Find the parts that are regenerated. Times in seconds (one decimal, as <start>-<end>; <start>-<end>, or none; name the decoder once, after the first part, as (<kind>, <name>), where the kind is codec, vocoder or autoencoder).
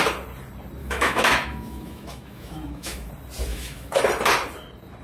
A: 0.8-3.1 (autoencoder, DAC-VAE); 3.5-4.0